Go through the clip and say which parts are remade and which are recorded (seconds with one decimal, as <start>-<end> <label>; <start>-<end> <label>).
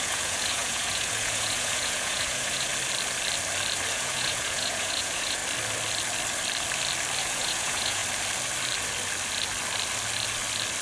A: 0.0-2.7 remade; 2.7-3.9 recorded; 3.9-5.4 remade; 5.4-7.2 recorded; 7.2-8.0 remade; 8.0-10.8 recorded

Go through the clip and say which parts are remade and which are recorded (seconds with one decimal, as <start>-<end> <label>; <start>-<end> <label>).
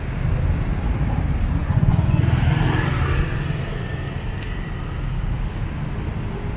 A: 0.0-1.6 recorded; 1.6-2.2 remade; 2.2-6.6 recorded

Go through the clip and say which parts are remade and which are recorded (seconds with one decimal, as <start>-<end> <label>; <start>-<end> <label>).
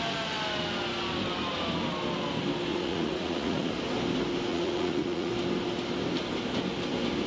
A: 0.0-2.7 recorded; 2.7-3.7 remade; 3.7-4.5 recorded; 4.5-5.3 remade; 5.3-7.3 recorded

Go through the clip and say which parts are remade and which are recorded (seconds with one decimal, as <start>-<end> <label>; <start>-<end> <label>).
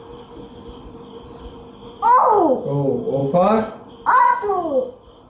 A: 0.0-5.3 recorded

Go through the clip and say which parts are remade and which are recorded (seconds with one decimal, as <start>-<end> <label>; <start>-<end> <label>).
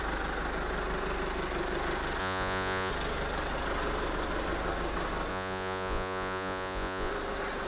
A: 0.0-2.2 recorded; 2.2-2.9 remade; 2.9-5.3 recorded; 5.3-7.1 remade; 7.1-7.7 recorded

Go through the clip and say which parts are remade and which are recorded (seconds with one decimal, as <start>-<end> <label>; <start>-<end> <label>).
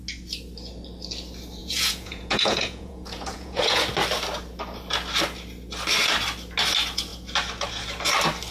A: 0.0-1.6 recorded; 1.6-3.8 remade; 3.8-8.5 recorded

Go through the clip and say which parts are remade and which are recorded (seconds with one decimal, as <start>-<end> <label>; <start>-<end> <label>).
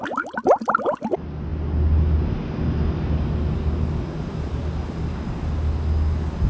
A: 0.0-6.5 recorded